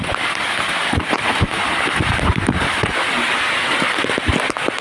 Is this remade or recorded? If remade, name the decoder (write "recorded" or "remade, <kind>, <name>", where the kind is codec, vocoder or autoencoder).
recorded